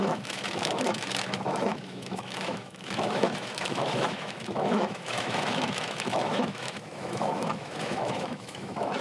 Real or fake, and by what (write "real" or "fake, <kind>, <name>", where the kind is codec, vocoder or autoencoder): fake, autoencoder, DAC-VAE